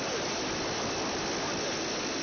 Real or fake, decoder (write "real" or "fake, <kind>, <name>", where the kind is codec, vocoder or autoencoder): real